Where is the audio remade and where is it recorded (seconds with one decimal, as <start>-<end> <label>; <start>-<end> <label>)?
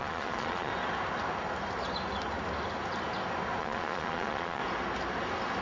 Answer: 0.0-0.7 remade; 0.7-3.6 recorded; 3.6-4.6 remade; 4.6-5.6 recorded